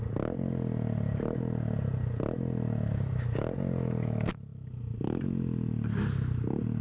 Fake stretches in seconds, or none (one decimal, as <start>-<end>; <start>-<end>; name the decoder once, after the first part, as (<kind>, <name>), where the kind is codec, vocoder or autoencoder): none